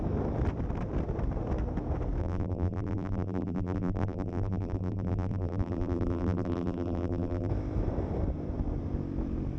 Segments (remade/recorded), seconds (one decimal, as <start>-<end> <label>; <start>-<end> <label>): 0.0-2.2 recorded; 2.2-7.5 remade; 7.5-9.6 recorded